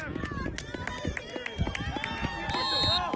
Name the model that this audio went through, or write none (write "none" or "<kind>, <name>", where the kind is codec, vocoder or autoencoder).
none